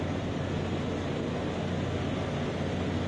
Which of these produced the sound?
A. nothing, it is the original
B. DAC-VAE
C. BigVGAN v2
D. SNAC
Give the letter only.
A